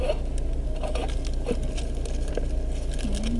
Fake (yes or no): no